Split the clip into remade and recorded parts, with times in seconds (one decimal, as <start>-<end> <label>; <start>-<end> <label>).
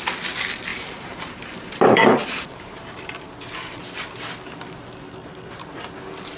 0.0-0.7 recorded; 0.7-3.2 remade; 3.2-6.4 recorded